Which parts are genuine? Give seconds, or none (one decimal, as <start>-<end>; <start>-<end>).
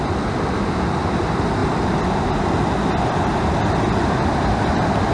0.0-5.1